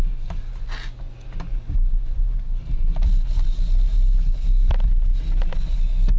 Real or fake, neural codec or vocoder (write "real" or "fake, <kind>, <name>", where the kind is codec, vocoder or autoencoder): real